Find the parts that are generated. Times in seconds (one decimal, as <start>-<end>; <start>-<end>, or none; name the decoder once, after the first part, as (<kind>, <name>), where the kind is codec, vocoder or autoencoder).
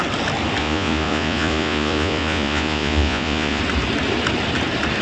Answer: 0.6-3.6 (vocoder, Vocos)